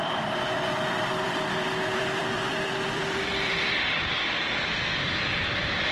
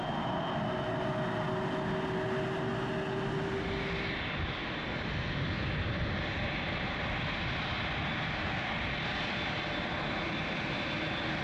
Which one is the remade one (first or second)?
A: first